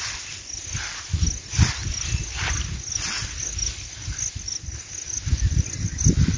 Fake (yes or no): no